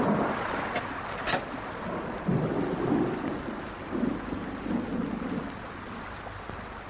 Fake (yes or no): no